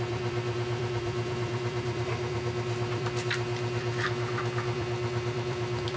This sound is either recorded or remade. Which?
remade